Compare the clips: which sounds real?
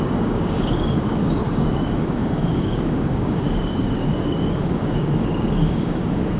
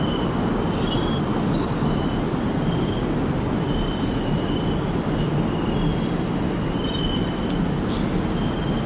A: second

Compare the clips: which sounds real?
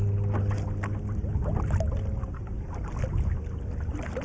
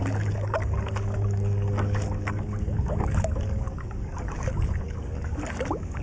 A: first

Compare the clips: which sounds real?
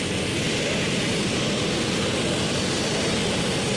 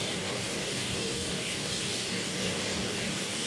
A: first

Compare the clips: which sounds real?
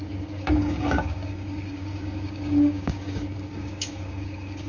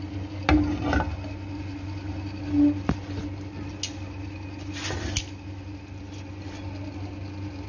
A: second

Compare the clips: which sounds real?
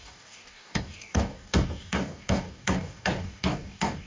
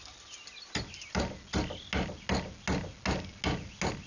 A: second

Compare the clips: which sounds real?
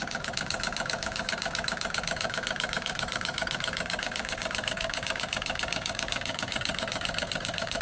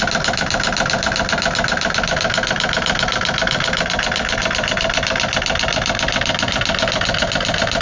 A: second